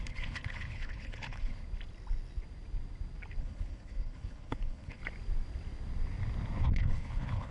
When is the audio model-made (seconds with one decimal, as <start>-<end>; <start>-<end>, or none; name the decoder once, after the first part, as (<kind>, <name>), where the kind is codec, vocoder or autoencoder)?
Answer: 0.0-1.6 (codec, HILCodec); 3.4-5.0; 6.7-7.5